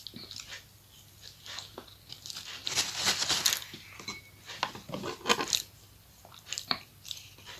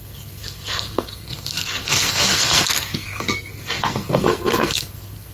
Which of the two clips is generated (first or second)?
second